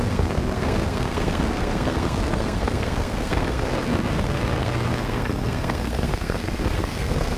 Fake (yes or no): yes